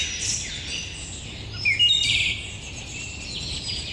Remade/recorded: recorded